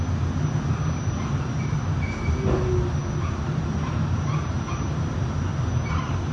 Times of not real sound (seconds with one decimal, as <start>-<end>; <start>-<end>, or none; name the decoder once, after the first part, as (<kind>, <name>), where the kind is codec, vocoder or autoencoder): none